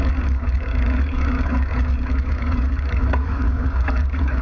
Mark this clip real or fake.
fake